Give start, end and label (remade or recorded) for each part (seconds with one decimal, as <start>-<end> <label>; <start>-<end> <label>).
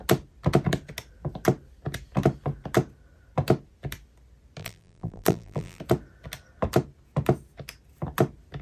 0.0-4.6 recorded; 4.6-5.8 remade; 5.8-8.6 recorded